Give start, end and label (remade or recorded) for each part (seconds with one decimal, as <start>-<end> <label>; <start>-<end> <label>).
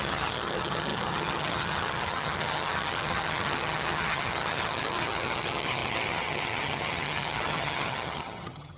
0.0-8.8 remade